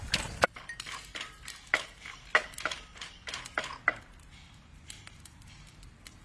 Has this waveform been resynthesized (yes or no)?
no